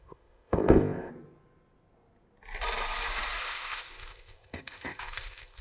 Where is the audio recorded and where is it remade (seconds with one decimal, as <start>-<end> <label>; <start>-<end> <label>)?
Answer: 0.0-1.1 remade; 1.1-3.4 recorded; 3.4-5.6 remade